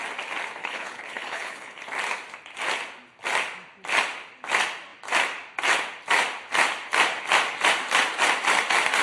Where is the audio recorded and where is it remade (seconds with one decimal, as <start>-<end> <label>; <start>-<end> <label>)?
0.0-0.6 recorded; 0.6-1.8 remade; 1.8-9.0 recorded